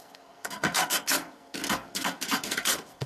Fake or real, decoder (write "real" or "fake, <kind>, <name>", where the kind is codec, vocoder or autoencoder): fake, codec, SNAC